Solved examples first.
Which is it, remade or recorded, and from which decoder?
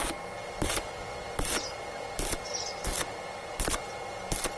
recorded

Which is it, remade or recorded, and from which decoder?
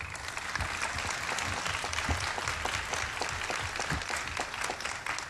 recorded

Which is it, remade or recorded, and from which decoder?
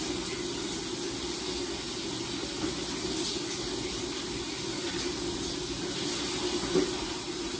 recorded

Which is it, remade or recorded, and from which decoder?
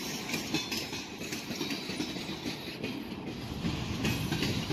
recorded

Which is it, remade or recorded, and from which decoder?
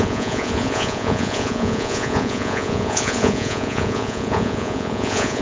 remade, vocoder, Vocos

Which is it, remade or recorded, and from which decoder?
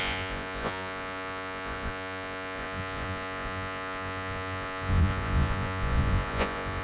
remade, vocoder, Vocos